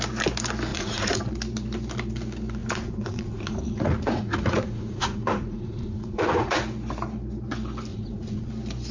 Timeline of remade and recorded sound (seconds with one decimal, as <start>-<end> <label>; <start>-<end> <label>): 0.0-0.7 recorded; 0.7-1.2 remade; 1.2-2.6 recorded; 2.6-6.6 remade; 6.6-7.9 recorded; 7.9-8.5 remade; 8.5-8.9 recorded